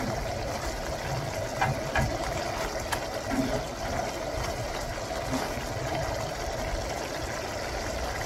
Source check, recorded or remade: recorded